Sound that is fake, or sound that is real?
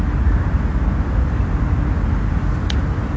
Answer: real